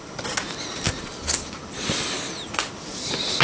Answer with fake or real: real